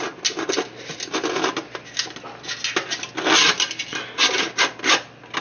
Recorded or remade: recorded